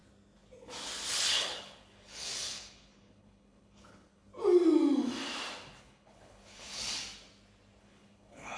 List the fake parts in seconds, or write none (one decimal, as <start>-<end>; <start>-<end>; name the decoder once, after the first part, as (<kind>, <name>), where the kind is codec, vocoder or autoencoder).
1.1-4.3 (codec, HILCodec); 5.8-7.0; 7.8-8.6